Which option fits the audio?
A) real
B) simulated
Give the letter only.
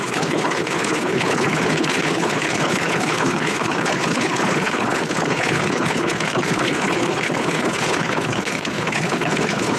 B